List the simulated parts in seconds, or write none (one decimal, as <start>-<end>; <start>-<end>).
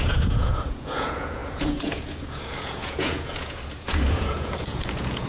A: 0.0-5.3